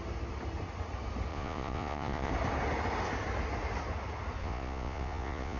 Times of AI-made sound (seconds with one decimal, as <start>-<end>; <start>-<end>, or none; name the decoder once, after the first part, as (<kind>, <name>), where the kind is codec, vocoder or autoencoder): 1.3-2.3 (vocoder, Vocos); 4.4-5.6